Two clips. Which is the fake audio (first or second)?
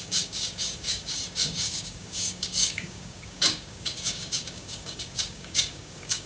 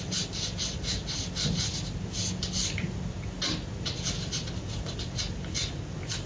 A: first